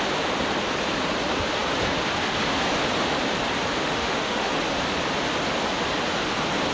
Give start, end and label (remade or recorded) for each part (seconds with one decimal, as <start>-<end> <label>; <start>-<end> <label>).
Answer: 0.0-3.8 recorded; 3.8-4.5 remade; 4.5-6.7 recorded